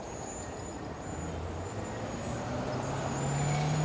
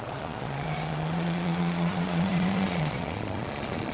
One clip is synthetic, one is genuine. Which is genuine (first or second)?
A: first